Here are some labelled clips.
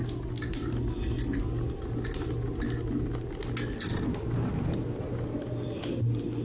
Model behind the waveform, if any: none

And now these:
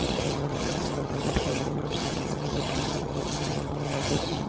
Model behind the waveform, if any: vocoder, HiFi-GAN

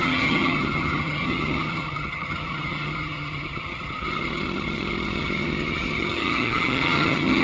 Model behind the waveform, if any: vocoder, HiFi-GAN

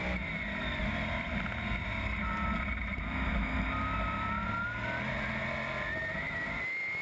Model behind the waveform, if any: none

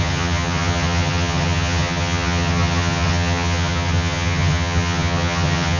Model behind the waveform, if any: vocoder, HiFi-GAN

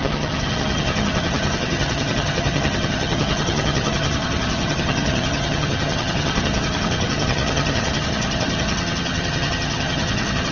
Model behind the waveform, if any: vocoder, HiFi-GAN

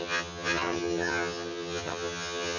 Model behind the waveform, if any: vocoder, HiFi-GAN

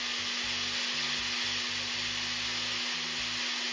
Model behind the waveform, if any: none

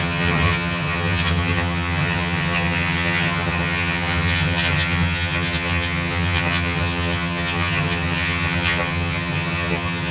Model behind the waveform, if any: vocoder, HiFi-GAN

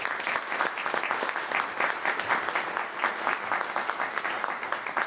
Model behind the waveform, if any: none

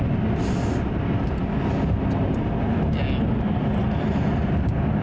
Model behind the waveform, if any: none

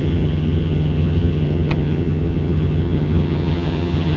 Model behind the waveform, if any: vocoder, HiFi-GAN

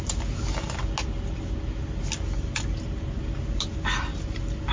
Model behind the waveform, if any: none